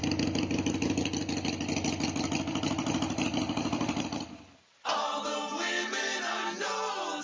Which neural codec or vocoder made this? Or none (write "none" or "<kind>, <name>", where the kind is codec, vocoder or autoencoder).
none